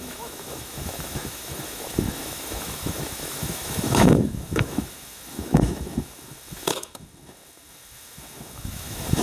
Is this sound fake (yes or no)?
yes